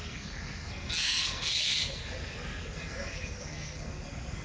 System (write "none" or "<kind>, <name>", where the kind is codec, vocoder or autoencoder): codec, SNAC